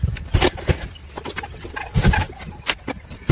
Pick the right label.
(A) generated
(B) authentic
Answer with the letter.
B